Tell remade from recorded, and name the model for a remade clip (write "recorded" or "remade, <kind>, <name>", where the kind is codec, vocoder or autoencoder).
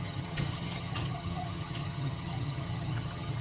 remade, vocoder, HiFi-GAN